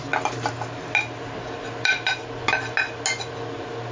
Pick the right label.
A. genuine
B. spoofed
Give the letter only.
A